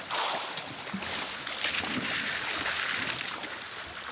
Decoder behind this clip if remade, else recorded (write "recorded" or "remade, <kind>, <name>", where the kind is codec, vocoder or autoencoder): recorded